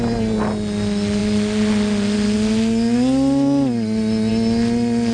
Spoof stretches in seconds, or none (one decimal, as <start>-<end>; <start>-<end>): none